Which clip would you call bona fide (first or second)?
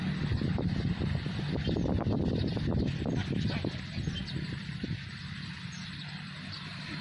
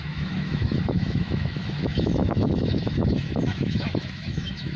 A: first